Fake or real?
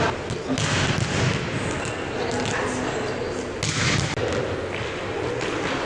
real